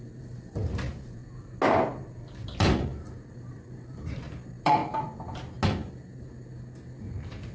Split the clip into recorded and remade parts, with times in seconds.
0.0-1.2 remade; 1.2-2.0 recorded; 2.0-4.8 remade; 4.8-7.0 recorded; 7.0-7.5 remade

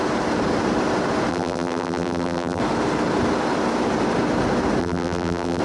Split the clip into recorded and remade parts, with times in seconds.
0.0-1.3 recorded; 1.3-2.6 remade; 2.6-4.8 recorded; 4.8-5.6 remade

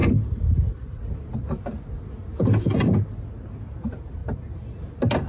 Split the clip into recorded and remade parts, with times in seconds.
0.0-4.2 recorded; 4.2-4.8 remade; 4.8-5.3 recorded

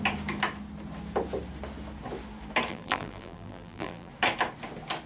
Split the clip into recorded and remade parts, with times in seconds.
0.0-2.7 recorded; 2.7-4.1 remade; 4.1-5.1 recorded